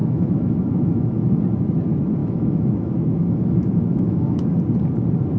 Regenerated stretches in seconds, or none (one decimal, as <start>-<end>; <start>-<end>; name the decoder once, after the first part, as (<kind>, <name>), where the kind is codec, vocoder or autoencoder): 0.0-1.4 (autoencoder, DAC-VAE); 2.2-4.6